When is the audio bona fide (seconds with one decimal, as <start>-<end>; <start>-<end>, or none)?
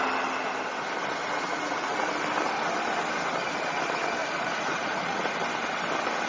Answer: 0.0-1.2; 2.1-4.2; 5.3-6.3